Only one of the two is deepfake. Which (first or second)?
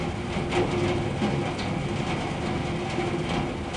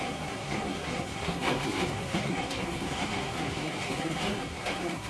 second